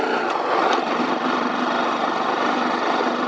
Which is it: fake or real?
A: real